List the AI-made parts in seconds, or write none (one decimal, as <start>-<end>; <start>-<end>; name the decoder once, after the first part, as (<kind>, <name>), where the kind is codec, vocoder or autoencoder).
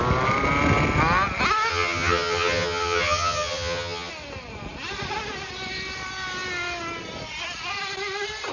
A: 1.7-4.1 (vocoder, HiFi-GAN)